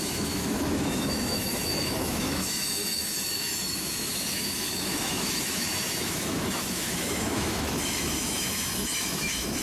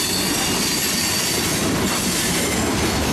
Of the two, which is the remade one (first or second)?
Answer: first